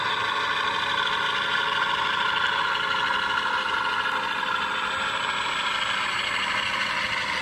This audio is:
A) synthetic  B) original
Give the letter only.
B